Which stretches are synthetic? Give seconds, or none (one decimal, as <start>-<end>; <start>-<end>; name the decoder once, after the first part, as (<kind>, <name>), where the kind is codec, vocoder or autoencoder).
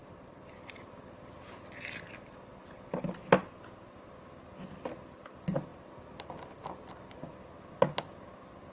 none